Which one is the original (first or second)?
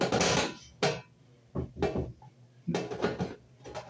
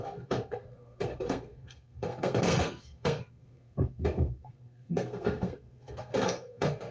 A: first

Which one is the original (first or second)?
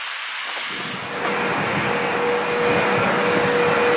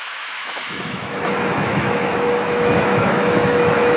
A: first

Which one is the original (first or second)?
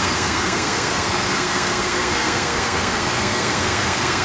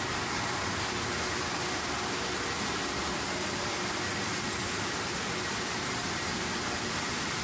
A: second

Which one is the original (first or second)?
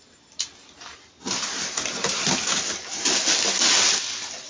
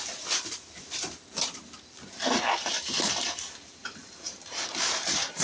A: first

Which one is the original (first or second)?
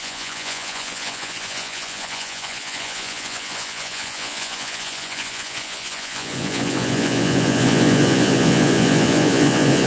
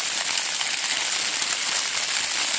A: second